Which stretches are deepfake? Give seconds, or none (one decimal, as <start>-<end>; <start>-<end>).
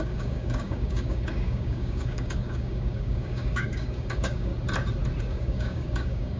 0.0-4.5; 5.2-6.4